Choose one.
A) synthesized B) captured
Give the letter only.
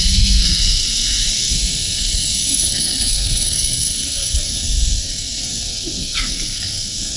A